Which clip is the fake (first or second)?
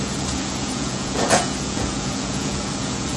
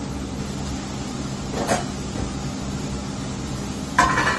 first